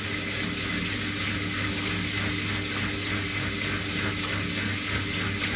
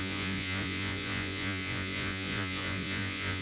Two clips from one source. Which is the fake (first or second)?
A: second